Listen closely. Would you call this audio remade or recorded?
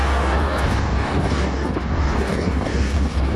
remade